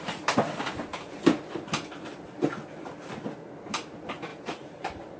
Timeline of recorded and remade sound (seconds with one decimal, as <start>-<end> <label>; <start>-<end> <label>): 0.0-0.9 remade; 0.9-3.7 recorded; 3.7-5.2 remade